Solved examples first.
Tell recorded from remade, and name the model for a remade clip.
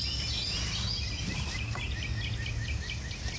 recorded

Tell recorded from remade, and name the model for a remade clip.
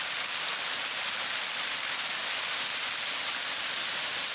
recorded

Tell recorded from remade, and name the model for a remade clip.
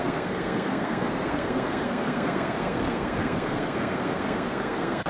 remade, codec, SNAC